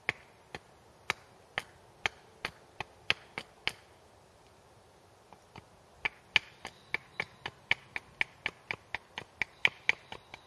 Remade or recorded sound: recorded